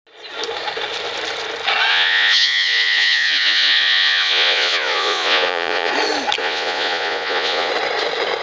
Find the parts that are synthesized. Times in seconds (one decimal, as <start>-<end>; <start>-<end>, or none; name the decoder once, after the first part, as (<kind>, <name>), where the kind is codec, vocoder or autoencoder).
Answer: 1.9-5.9 (vocoder, Vocos); 6.4-7.7